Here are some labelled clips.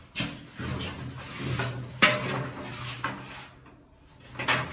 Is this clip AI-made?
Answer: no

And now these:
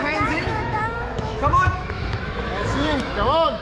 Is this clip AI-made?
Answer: yes